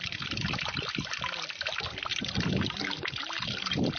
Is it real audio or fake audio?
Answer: real